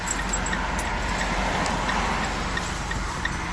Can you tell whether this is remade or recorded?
recorded